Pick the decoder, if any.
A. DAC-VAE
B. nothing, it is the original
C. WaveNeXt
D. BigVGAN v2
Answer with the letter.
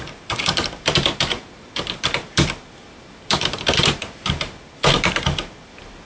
D